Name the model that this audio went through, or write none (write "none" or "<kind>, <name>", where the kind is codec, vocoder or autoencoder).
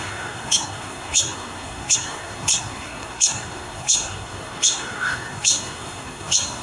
codec, SNAC